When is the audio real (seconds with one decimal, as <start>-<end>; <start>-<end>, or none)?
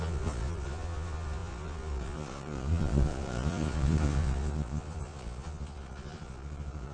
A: none